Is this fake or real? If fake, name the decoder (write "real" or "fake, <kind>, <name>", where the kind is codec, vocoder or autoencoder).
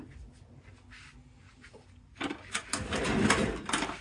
real